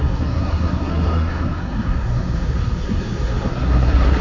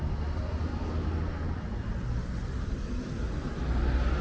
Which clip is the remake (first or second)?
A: first